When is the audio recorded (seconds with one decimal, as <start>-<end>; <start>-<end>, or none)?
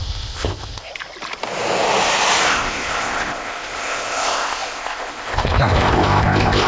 0.9-2.5